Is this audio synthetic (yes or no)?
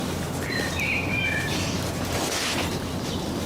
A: yes